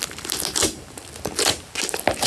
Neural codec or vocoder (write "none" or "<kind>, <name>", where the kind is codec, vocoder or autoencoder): none